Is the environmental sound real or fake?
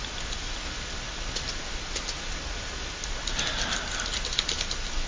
real